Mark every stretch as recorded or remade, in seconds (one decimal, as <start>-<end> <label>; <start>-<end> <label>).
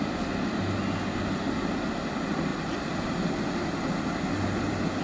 0.0-5.0 recorded